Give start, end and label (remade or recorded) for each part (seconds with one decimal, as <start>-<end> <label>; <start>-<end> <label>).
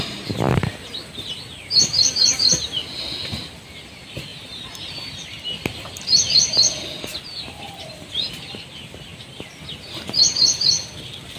0.0-4.3 remade; 4.3-4.9 recorded; 4.9-9.1 remade; 9.1-9.7 recorded; 9.7-11.4 remade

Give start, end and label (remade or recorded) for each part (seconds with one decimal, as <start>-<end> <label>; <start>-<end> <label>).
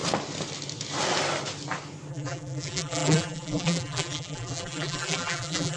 0.0-2.1 recorded; 2.1-5.8 remade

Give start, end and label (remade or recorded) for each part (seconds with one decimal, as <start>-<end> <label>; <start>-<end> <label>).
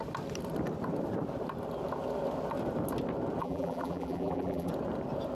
0.0-3.4 recorded; 3.4-4.7 remade; 4.7-5.3 recorded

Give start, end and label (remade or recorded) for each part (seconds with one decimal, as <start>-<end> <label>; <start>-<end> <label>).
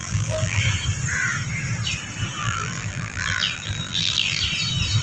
0.0-0.6 remade; 0.6-2.4 recorded; 2.4-4.4 remade; 4.4-5.0 recorded